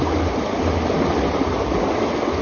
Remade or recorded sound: recorded